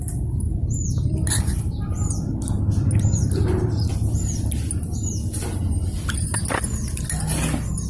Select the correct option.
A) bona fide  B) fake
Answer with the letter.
A